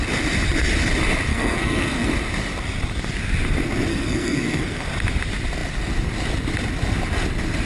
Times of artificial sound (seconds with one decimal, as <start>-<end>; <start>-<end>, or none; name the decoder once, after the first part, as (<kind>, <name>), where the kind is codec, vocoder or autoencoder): 1.3-2.1 (codec, SNAC); 3.9-4.9